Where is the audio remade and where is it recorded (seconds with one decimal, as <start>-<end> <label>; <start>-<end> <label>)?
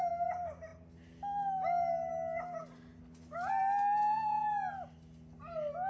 0.0-5.9 recorded